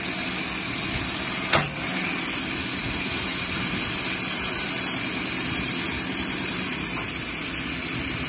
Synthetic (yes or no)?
yes